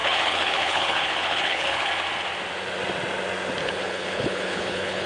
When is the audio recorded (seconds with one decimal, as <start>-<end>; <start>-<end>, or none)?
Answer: 1.9-3.6